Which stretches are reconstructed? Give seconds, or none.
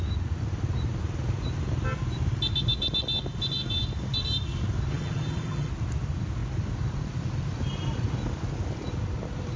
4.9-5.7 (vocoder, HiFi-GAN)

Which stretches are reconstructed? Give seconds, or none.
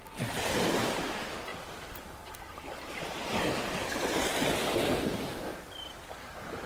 1.5-2.4 (vocoder, BigVGAN v2); 4.3-4.8; 5.5-6.3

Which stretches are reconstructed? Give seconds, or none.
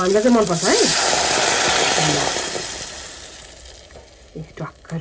0.9-3.4 (vocoder, BigVGAN v2)